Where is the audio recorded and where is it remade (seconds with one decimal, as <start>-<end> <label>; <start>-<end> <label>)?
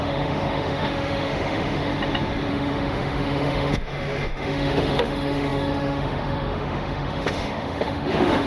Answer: 0.0-1.9 remade; 1.9-2.5 recorded; 2.5-8.5 remade